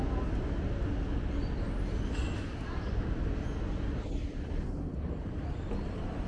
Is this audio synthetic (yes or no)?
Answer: no